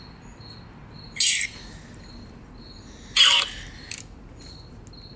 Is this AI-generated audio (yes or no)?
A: no